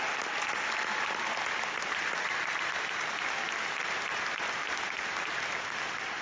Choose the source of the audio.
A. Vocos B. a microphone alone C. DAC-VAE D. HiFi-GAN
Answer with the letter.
B